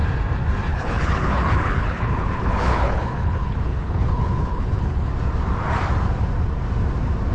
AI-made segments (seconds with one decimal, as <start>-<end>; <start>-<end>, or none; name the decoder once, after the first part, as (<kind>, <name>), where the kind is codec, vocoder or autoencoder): 0.7-5.1 (codec, HILCodec)